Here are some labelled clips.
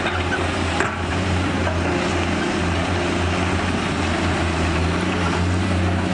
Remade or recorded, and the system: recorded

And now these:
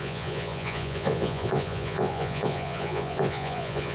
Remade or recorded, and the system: remade, vocoder, Vocos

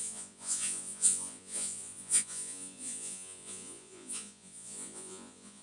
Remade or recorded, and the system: remade, vocoder, Vocos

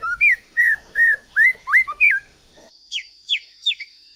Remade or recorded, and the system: remade, autoencoder, DAC-VAE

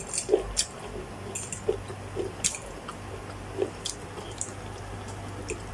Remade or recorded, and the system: recorded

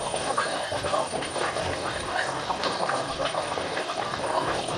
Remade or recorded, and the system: remade, codec, DAC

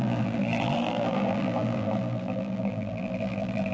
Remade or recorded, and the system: remade, vocoder, BigVGAN v2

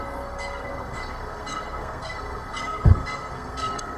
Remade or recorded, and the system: remade, codec, SNAC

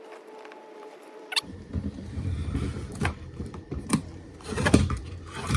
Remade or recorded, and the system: remade, vocoder, BigVGAN v2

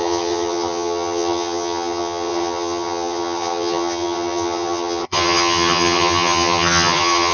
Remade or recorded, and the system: remade, vocoder, HiFi-GAN